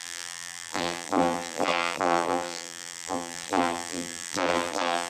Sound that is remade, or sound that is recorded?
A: remade